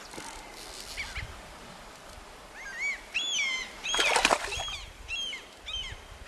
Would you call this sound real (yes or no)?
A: yes